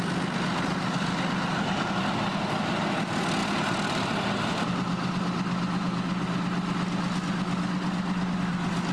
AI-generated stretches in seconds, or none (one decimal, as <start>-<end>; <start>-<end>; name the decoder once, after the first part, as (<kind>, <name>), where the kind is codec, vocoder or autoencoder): none